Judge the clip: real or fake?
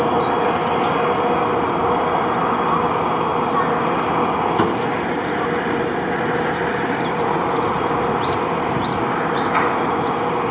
real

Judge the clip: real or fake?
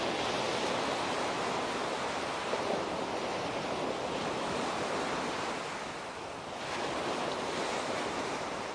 real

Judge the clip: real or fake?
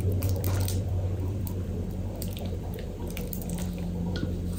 fake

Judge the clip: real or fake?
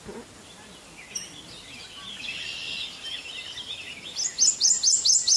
real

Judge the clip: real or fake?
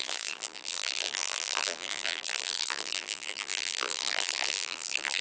fake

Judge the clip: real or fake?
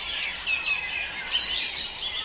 real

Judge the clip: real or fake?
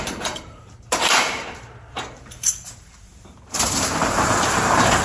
fake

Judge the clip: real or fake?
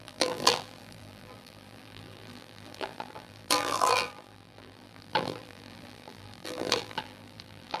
fake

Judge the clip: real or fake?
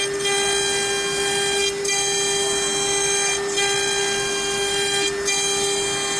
real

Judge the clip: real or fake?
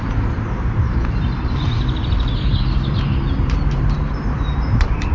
fake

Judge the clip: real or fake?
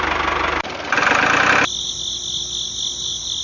real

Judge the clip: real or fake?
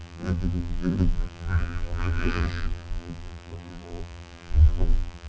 fake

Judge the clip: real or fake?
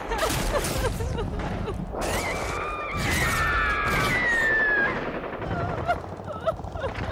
real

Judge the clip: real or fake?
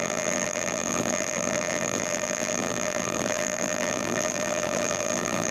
fake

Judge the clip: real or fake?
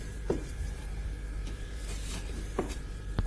fake